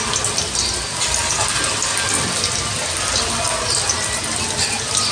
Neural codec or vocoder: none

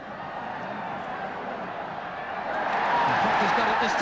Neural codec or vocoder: none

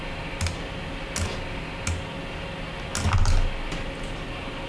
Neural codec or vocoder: none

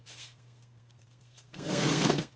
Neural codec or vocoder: codec, SNAC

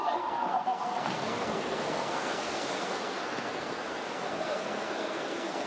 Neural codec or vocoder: codec, SNAC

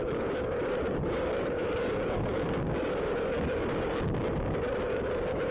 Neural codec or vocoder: codec, DAC